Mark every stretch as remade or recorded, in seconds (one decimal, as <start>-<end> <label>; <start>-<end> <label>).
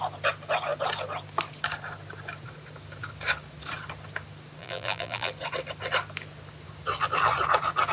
0.0-4.6 recorded; 4.6-5.3 remade; 5.3-7.9 recorded